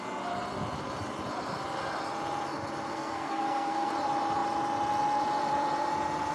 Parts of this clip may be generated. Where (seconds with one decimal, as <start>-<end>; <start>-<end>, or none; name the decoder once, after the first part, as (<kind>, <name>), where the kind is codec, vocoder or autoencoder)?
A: 2.9-3.9 (codec, SNAC)